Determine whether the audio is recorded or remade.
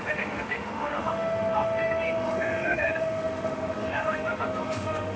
remade